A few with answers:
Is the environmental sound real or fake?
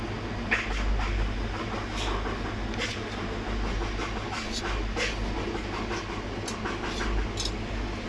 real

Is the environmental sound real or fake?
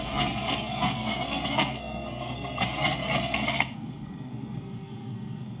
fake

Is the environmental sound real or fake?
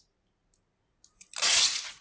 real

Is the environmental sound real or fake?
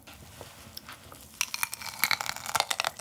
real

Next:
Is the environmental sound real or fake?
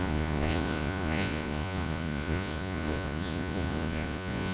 fake